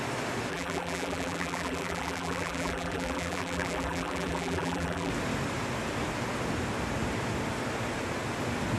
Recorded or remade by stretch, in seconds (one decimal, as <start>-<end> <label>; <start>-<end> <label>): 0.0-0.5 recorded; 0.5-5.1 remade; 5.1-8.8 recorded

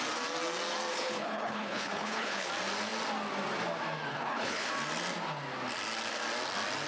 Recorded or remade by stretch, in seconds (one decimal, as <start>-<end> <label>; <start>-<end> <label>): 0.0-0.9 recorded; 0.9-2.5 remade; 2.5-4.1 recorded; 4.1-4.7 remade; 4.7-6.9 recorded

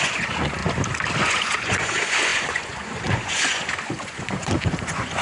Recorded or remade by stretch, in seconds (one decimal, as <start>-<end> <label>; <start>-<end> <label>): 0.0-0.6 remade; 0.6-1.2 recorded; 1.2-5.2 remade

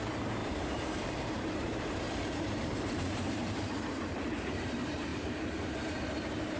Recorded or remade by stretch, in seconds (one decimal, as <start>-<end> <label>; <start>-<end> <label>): 0.0-5.1 remade; 5.1-5.9 recorded; 5.9-6.6 remade

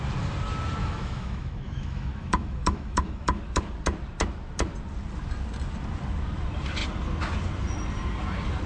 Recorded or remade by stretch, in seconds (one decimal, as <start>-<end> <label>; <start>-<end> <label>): 0.0-0.8 recorded; 0.8-3.4 remade; 3.4-8.7 recorded

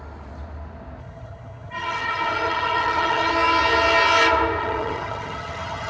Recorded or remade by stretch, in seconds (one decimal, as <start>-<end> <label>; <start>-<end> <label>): 0.0-1.0 recorded; 1.0-3.3 remade; 3.3-4.6 recorded; 4.6-5.9 remade

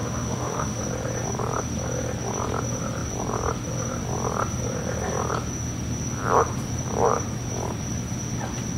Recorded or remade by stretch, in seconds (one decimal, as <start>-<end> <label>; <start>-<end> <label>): 0.0-0.8 remade; 0.8-8.8 recorded

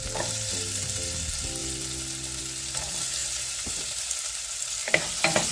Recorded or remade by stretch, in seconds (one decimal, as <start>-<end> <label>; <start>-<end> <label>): 0.0-3.2 recorded; 3.2-4.2 remade; 4.2-5.5 recorded